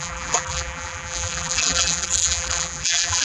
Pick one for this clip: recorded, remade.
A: remade